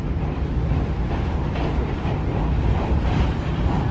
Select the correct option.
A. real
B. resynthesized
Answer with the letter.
B